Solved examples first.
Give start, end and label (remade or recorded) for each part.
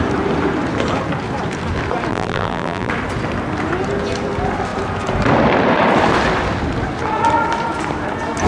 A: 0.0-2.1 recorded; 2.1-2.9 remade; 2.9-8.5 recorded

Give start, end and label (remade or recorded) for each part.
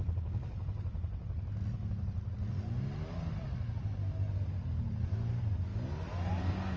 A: 0.0-6.8 recorded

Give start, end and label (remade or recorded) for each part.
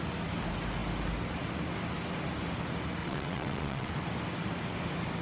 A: 0.0-3.0 recorded; 3.0-3.9 remade; 3.9-5.2 recorded